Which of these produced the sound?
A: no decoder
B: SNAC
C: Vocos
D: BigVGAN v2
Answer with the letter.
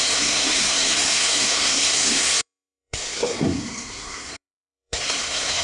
B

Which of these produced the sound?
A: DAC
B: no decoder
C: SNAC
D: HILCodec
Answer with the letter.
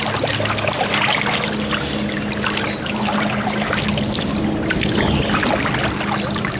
B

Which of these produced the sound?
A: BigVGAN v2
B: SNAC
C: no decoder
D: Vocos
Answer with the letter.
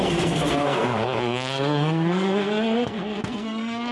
B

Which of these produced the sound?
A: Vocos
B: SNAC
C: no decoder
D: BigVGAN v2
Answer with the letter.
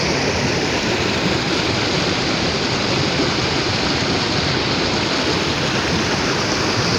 C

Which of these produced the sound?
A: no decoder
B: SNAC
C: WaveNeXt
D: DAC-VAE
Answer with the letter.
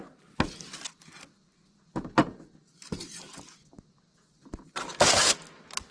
A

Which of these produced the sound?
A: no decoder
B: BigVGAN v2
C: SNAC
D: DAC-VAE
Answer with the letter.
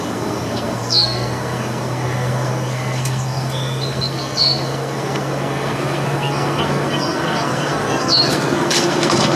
C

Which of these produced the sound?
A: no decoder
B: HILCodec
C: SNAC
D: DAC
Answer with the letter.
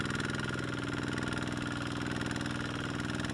A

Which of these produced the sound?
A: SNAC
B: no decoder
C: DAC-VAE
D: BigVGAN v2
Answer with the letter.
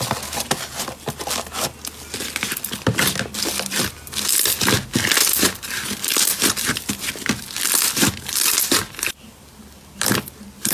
B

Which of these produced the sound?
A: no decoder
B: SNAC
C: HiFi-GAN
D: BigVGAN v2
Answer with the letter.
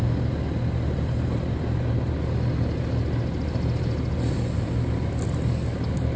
A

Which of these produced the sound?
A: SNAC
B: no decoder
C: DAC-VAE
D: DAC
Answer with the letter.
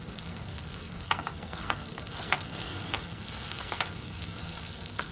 A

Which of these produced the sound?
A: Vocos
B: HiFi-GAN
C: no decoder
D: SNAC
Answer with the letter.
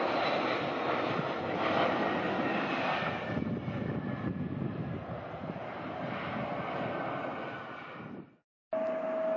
C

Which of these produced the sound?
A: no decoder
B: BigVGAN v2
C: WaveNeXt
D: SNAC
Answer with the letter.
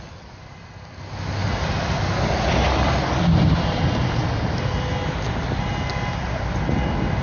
A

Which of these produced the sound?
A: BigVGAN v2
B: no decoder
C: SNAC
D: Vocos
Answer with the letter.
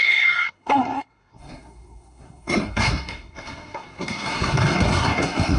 C